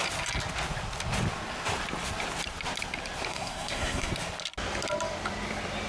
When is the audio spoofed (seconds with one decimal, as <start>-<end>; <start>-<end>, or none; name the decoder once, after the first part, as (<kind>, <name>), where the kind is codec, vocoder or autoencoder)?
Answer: 3.3-4.1 (codec, SNAC)